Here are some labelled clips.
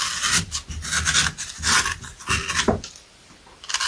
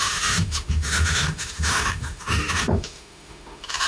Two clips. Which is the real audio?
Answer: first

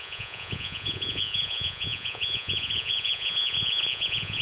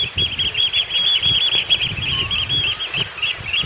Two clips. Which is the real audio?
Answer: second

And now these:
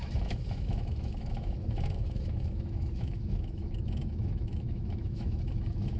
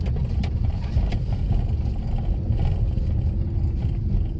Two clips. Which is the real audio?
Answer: second